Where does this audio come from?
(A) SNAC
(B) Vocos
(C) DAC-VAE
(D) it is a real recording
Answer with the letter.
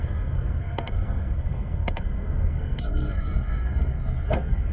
A